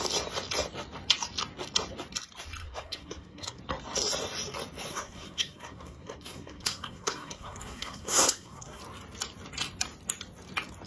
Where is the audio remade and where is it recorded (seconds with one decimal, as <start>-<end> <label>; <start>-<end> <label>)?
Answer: 0.0-2.6 recorded; 2.6-3.6 remade; 3.6-4.9 recorded; 4.9-8.8 remade; 8.8-10.9 recorded